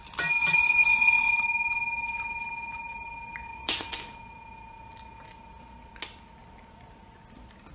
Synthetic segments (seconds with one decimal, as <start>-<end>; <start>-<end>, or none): 0.4-1.3; 3.5-4.0